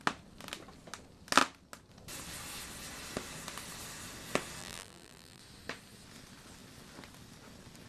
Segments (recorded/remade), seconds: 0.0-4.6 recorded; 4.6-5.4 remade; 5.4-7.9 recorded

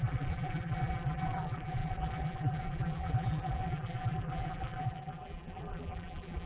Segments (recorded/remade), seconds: 0.0-6.5 remade

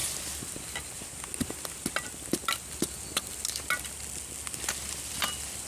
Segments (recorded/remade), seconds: 0.0-5.7 recorded

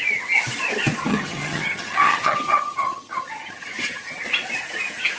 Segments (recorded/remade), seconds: 0.0-1.1 recorded; 1.1-4.2 remade; 4.2-5.2 recorded

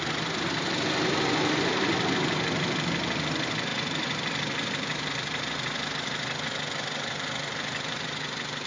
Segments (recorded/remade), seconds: 0.0-8.7 recorded

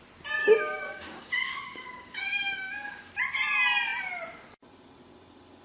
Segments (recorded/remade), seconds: 0.0-0.4 recorded; 0.4-3.1 remade; 3.1-5.6 recorded